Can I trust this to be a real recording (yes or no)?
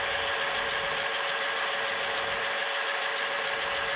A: no